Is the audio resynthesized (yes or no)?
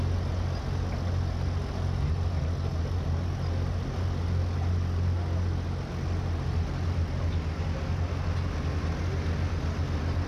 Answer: no